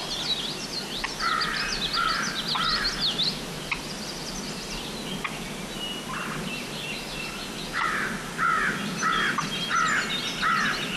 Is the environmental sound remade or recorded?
recorded